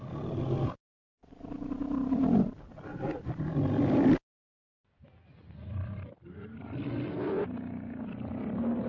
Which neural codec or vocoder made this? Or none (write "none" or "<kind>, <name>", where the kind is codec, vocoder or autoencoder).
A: vocoder, BigVGAN v2